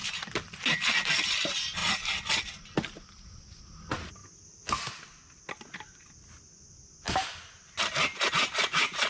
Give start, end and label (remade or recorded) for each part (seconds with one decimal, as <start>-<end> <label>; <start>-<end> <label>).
0.0-9.1 recorded